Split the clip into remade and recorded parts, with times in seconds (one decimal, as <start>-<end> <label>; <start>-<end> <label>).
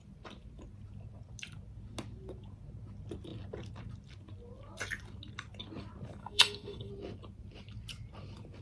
0.0-6.2 recorded; 6.2-6.9 remade; 6.9-8.6 recorded